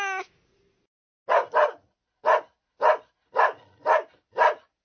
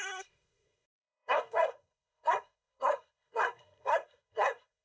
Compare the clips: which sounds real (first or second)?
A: first